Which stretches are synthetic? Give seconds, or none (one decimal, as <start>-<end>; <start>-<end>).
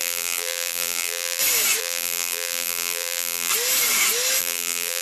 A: 0.0-1.4; 1.8-3.5; 4.4-5.0